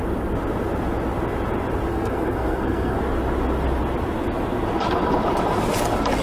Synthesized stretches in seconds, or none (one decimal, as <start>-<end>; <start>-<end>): 1.9-3.0